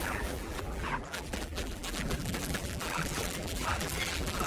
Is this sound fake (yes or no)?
yes